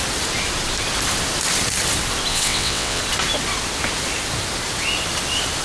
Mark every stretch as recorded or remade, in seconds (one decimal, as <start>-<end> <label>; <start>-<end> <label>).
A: 0.0-2.3 recorded; 2.3-3.0 remade; 3.0-5.6 recorded